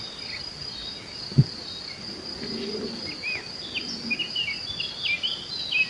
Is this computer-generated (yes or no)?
no